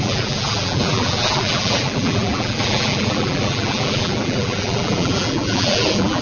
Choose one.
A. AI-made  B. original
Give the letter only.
A